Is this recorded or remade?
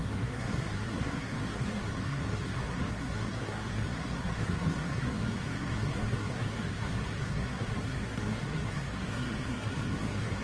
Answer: remade